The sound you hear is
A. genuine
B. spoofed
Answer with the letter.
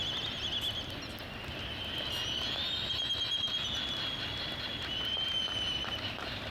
A